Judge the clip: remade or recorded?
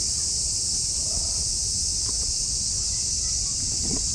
remade